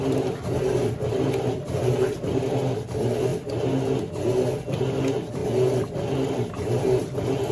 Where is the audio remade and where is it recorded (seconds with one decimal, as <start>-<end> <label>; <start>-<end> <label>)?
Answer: 0.0-7.5 recorded